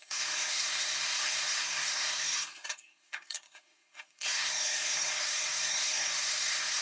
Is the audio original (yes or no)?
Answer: no